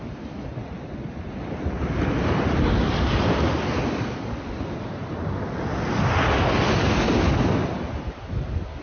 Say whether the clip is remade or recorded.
recorded